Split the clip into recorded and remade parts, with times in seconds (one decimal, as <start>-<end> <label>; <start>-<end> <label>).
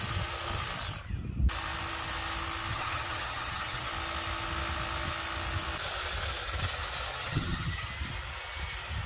0.0-2.7 recorded; 2.7-3.9 remade; 3.9-7.1 recorded; 7.1-7.9 remade; 7.9-9.1 recorded